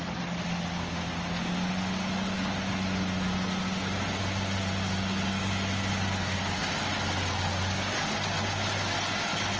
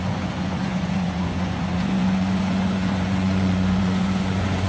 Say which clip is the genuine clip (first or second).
first